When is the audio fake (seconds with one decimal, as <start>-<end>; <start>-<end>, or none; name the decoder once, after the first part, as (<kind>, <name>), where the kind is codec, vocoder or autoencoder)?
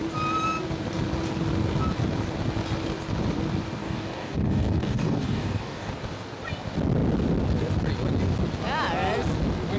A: 3.8-5.9 (codec, DAC)